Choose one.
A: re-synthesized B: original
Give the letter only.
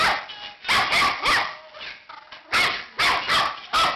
B